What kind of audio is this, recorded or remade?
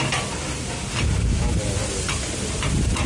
recorded